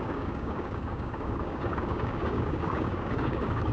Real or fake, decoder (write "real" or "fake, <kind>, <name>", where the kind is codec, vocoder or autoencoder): fake, codec, DAC